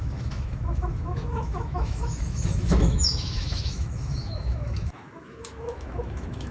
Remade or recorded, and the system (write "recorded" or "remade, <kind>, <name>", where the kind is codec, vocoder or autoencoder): remade, autoencoder, DAC-VAE